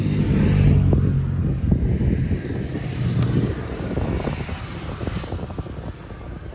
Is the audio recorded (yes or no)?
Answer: yes